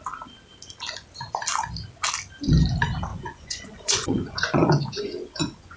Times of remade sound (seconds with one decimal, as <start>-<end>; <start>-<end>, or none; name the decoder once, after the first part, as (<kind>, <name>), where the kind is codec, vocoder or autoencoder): 3.1-5.8 (vocoder, Vocos)